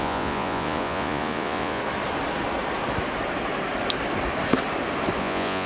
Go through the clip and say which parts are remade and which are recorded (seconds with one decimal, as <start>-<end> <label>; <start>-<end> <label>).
0.0-1.8 remade; 1.8-5.2 recorded; 5.2-5.7 remade